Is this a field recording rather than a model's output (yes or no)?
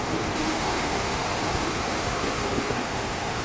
no